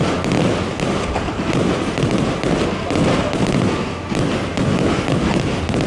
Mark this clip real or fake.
real